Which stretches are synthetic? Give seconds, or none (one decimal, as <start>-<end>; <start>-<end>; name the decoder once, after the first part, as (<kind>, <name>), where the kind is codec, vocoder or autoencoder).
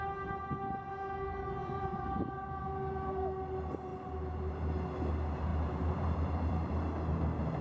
1.6-2.6 (vocoder, BigVGAN v2)